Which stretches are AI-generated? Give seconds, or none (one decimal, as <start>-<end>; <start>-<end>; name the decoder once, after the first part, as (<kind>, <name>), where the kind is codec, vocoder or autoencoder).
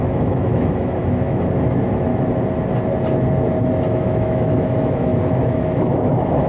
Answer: 0.0-2.1 (autoencoder, DAC-VAE); 3.9-6.5